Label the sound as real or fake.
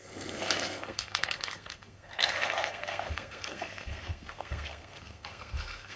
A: fake